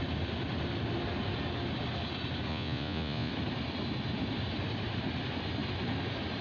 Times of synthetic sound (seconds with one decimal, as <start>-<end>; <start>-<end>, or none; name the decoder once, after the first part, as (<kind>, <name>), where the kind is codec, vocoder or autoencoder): 2.5-3.3 (vocoder, Vocos)